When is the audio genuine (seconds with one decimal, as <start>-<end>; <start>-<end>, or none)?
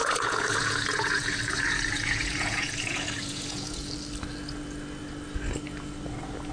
3.9-6.5